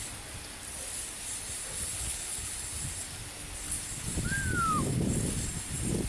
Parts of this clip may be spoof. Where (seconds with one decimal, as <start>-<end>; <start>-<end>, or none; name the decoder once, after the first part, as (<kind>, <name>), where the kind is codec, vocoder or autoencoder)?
1.9-2.5 (codec, HILCodec)